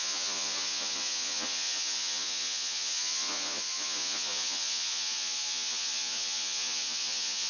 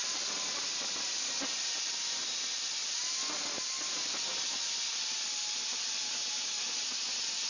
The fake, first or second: first